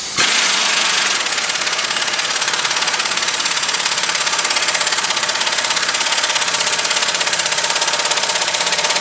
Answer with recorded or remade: remade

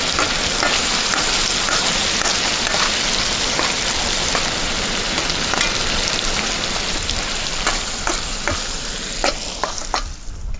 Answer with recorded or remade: recorded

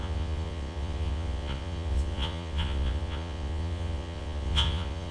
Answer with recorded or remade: remade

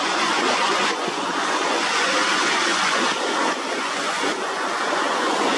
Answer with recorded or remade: remade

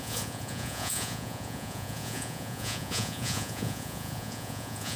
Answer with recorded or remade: remade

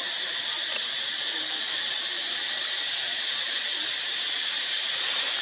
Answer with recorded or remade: recorded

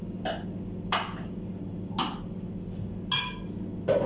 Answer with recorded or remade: recorded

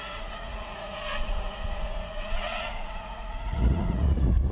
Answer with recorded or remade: remade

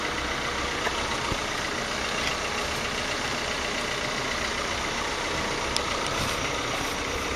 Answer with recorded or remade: recorded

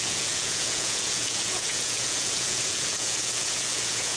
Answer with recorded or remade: remade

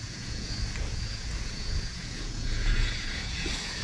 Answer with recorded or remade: remade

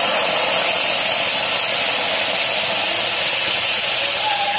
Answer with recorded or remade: recorded